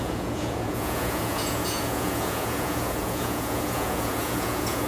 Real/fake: fake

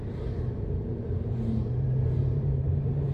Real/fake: fake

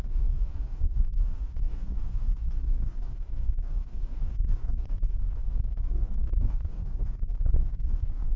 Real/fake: fake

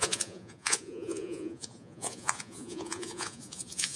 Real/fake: fake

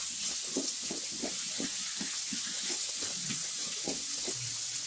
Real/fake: fake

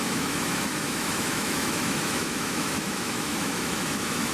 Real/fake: fake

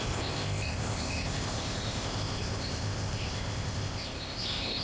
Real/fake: fake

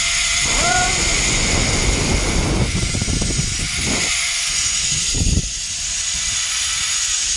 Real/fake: fake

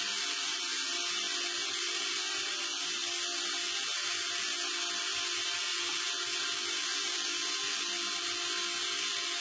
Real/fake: real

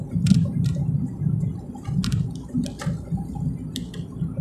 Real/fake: real